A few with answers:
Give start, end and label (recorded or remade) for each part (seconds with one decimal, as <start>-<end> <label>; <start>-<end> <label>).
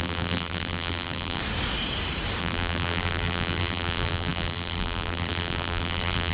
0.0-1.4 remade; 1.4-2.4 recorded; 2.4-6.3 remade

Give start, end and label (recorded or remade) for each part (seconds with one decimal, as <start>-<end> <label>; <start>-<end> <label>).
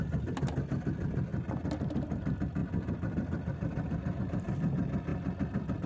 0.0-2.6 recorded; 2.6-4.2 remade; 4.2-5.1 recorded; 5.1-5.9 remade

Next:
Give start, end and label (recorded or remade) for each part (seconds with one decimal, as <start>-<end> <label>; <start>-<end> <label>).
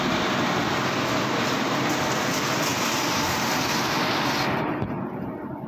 0.0-5.7 recorded